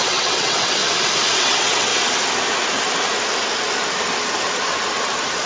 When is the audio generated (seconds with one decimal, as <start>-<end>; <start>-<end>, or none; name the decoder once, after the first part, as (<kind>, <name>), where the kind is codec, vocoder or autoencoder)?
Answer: 0.0-0.8 (vocoder, WaveNeXt); 1.4-1.9